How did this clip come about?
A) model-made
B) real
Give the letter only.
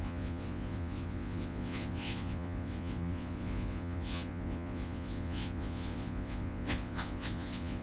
A